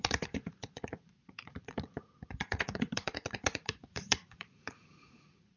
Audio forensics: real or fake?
fake